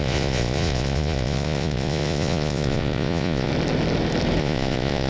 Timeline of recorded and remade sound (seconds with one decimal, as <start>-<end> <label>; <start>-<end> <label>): 0.0-3.5 remade; 3.5-4.4 recorded; 4.4-5.1 remade